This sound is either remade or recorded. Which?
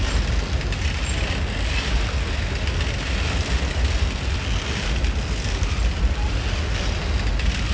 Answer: recorded